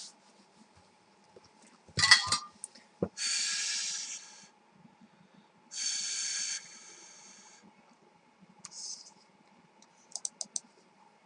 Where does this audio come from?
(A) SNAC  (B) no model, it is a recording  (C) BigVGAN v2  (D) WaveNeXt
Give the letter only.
B